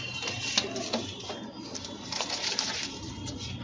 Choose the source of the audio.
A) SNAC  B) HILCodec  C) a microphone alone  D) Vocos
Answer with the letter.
C